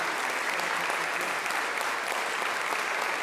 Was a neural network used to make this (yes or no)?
no